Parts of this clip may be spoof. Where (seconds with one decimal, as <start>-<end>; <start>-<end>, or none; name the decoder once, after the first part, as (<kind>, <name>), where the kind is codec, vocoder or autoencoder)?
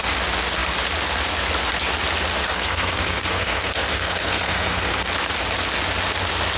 2.4-5.0 (codec, SNAC)